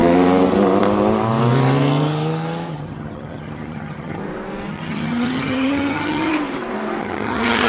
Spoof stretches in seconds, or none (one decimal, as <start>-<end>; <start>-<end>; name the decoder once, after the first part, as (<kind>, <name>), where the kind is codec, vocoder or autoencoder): 2.7-4.2 (vocoder, HiFi-GAN); 4.7-6.3; 7.0-7.7